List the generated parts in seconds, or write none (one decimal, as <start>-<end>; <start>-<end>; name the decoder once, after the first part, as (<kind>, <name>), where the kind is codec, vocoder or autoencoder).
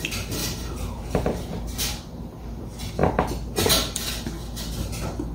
0.4-2.6 (vocoder, BigVGAN v2)